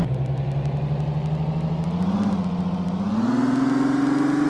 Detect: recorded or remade recorded